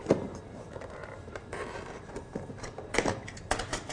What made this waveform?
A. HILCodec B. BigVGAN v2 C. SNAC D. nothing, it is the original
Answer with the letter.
B